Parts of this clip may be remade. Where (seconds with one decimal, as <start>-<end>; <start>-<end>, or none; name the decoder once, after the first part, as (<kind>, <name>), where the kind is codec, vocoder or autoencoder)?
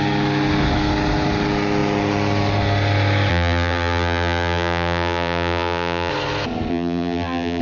3.3-6.1 (vocoder, BigVGAN v2); 6.7-7.6